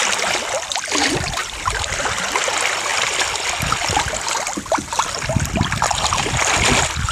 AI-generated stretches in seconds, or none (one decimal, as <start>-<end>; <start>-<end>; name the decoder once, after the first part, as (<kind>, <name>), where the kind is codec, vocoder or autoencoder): none